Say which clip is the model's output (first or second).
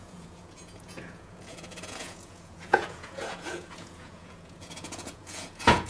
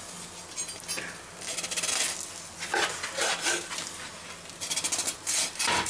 first